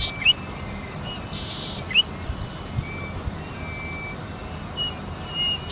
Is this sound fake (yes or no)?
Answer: no